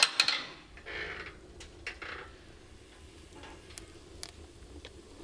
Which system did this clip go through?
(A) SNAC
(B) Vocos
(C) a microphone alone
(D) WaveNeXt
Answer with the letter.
C